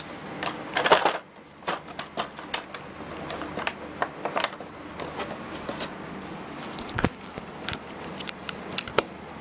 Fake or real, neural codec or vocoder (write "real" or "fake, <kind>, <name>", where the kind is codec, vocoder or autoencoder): real